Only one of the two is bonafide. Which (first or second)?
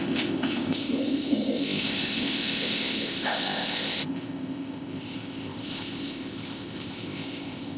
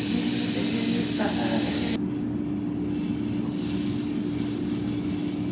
second